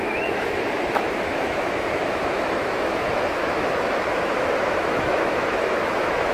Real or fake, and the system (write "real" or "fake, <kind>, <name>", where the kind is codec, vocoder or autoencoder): fake, autoencoder, DAC-VAE